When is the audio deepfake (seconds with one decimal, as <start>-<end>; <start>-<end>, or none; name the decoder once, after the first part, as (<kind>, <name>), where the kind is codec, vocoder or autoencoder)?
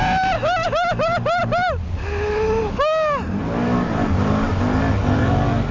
none